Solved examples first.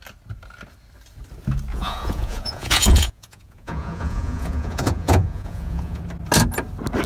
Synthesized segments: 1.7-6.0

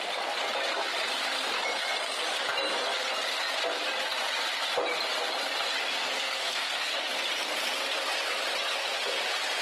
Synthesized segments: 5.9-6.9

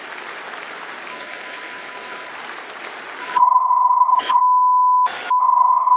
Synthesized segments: 1.1-2.3; 3.2-4.4; 5.4-6.0

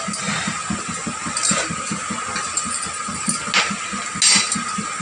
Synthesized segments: none